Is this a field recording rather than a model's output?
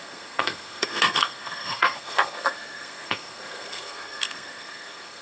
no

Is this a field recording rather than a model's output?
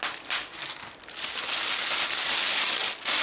yes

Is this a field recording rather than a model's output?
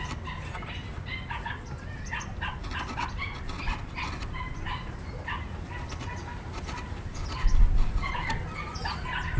yes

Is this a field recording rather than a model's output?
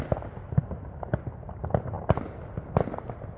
yes